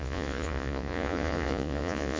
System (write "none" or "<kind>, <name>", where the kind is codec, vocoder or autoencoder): vocoder, Vocos